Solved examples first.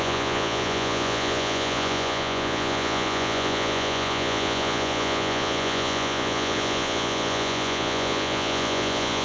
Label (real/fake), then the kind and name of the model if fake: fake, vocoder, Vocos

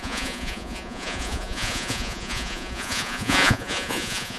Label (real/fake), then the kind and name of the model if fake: fake, vocoder, Vocos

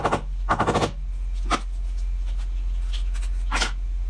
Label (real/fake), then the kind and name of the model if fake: real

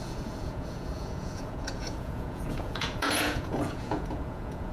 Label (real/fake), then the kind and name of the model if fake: fake, vocoder, Vocos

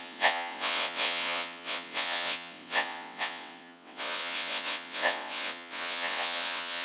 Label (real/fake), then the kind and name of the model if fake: fake, vocoder, WaveNeXt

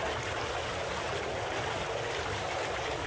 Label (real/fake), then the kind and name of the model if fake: real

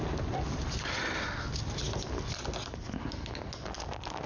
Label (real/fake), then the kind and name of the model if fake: real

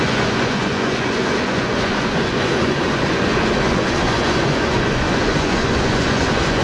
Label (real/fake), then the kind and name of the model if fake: fake, vocoder, Vocos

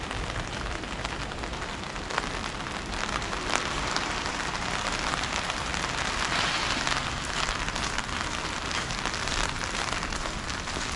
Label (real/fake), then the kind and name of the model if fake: real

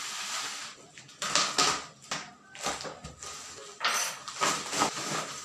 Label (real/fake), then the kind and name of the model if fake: real